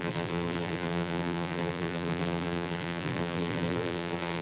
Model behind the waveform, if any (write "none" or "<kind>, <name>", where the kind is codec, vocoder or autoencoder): vocoder, BigVGAN v2